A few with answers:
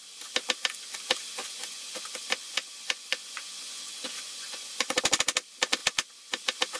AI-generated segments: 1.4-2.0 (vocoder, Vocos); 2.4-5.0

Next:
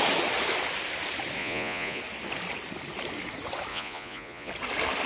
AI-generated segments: 1.4-2.0 (vocoder, Vocos); 3.7-4.5

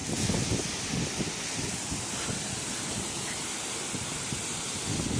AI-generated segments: none

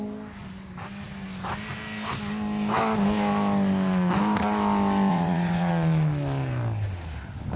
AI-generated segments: 5.1-5.7 (vocoder, Vocos)

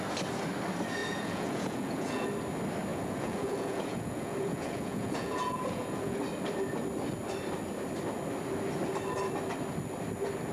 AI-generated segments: 1.0-2.3 (vocoder, Vocos); 2.9-6.2